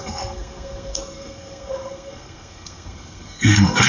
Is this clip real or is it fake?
fake